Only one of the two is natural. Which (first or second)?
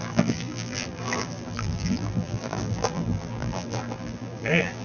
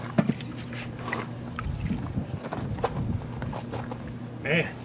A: second